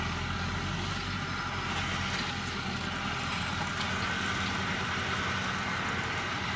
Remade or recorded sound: recorded